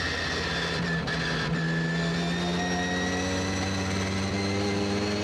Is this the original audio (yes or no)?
yes